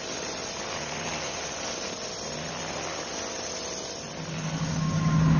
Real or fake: real